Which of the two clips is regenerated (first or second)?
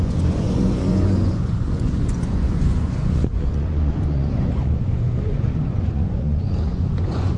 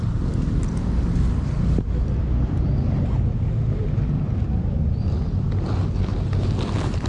first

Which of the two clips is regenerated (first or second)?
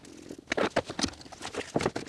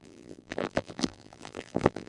second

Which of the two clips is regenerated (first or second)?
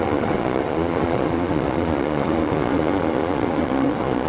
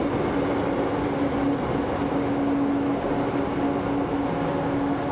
first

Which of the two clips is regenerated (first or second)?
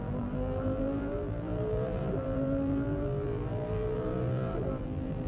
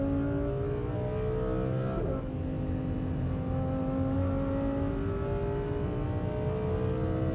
first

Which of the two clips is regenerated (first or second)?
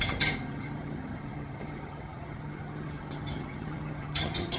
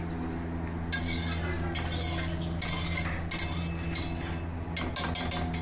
first